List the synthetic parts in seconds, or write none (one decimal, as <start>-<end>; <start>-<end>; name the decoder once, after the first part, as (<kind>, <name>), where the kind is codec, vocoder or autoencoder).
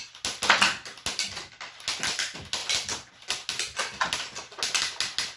none